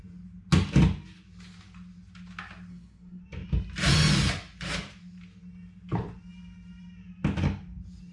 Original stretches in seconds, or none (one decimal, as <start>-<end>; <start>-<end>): 0.0-2.7; 3.2-8.1